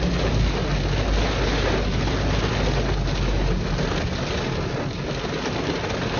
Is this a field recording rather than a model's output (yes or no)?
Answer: yes